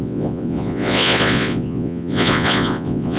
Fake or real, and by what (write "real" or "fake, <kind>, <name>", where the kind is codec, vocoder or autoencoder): fake, vocoder, Vocos